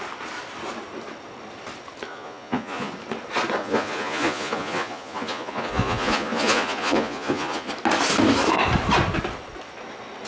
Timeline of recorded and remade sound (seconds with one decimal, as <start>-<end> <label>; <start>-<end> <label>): 0.0-2.1 recorded; 2.1-2.9 remade; 2.9-3.6 recorded; 3.6-7.7 remade; 7.7-10.3 recorded